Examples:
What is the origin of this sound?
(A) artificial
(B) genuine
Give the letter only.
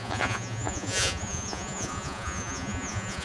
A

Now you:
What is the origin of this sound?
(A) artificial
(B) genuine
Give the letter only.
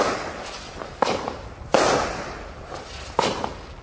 B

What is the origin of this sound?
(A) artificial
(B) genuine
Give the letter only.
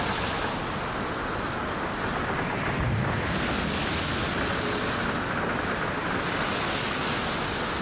B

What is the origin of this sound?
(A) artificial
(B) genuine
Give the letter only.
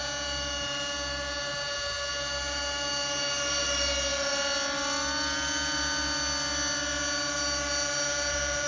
B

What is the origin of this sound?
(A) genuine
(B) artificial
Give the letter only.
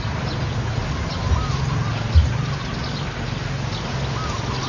A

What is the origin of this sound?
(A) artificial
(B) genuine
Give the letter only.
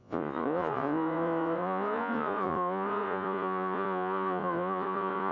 A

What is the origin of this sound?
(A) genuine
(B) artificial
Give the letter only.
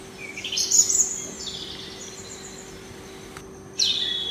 A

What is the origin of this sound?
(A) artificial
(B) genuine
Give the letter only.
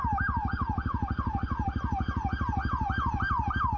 B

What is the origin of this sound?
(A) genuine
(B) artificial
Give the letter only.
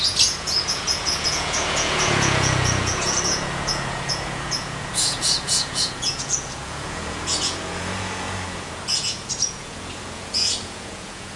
B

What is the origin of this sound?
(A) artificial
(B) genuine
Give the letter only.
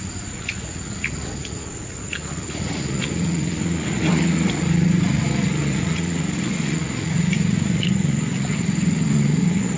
A